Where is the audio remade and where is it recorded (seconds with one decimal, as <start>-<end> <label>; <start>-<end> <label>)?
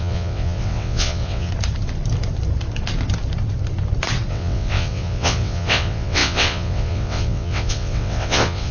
0.0-1.5 remade; 1.5-4.3 recorded; 4.3-8.7 remade